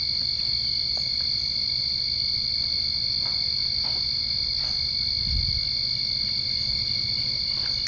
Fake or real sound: real